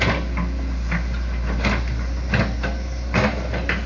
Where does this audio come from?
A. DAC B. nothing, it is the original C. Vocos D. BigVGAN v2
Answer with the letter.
B